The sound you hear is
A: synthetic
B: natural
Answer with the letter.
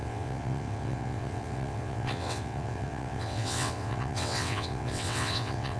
A